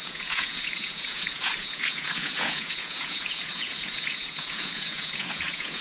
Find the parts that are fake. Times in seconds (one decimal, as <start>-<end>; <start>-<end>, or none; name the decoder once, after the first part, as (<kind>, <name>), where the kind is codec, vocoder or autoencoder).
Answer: 0.0-5.8 (vocoder, Vocos)